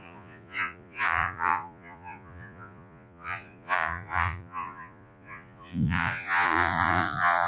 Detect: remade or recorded remade